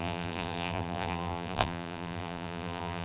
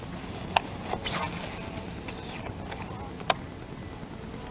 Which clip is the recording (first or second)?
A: second